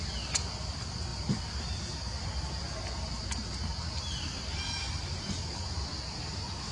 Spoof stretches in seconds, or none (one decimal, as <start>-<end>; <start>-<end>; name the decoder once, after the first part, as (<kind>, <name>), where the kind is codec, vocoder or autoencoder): none